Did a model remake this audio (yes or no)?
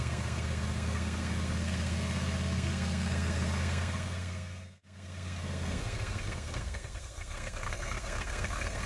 yes